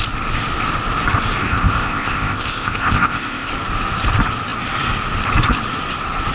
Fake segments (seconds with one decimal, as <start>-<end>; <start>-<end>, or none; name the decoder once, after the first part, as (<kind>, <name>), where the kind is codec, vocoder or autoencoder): 1.4-3.5 (codec, ZipCodec)